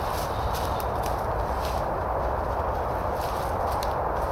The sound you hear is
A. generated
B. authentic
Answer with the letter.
B